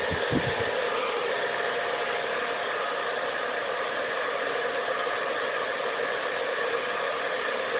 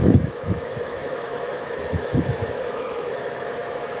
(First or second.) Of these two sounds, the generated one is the second